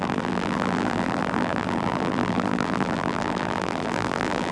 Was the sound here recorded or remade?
remade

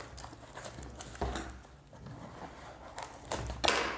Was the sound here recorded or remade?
recorded